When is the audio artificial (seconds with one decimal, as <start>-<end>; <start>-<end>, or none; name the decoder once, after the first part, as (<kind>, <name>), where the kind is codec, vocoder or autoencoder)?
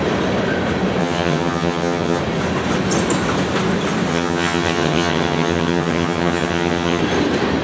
1.0-2.2 (vocoder, HiFi-GAN); 4.1-7.0